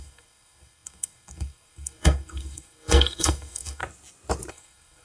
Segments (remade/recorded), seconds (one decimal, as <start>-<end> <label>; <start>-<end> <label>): 0.0-3.8 remade; 3.8-4.5 recorded; 4.5-5.0 remade